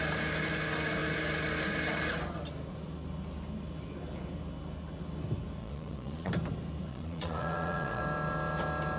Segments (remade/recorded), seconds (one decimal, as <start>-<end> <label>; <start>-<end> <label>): 0.0-5.6 recorded; 5.6-6.3 remade; 6.3-6.9 recorded; 6.9-8.0 remade; 8.0-9.0 recorded